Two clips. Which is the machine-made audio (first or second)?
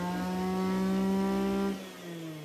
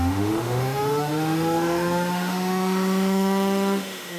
second